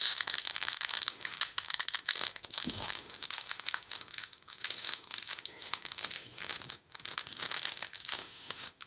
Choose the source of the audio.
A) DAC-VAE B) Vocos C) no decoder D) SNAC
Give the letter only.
A